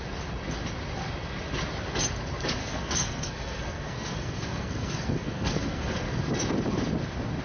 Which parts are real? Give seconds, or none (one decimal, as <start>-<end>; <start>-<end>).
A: 0.0-2.6; 6.2-7.4